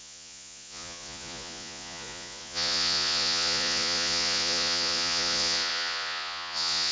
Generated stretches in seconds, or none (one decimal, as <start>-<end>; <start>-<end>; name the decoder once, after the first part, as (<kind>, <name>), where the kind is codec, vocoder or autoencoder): 0.0-6.9 (vocoder, Vocos)